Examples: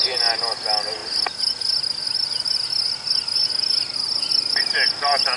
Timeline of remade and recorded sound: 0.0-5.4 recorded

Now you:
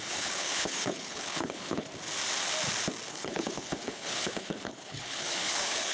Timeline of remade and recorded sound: 0.0-1.9 remade; 1.9-3.1 recorded; 3.1-5.9 remade

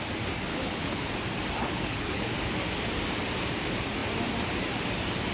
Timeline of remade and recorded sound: 0.0-0.5 recorded; 0.5-1.1 remade; 1.1-1.6 recorded; 1.6-2.3 remade; 2.3-5.3 recorded

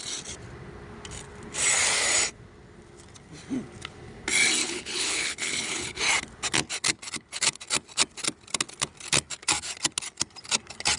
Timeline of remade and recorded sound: 0.0-4.6 recorded; 4.6-6.0 remade; 6.0-11.0 recorded

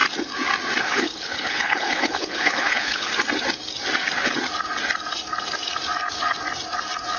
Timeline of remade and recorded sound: 0.0-0.8 recorded; 0.8-3.1 remade; 3.1-7.2 recorded

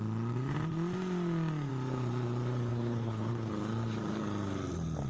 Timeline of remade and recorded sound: 0.0-2.7 recorded; 2.7-3.5 remade; 3.5-5.1 recorded

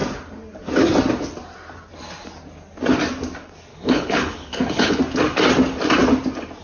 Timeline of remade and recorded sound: 0.0-3.7 recorded; 3.7-5.0 remade; 5.0-6.6 recorded

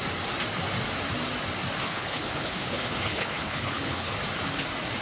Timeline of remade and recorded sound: 0.0-1.8 recorded; 1.8-4.1 remade; 4.1-5.0 recorded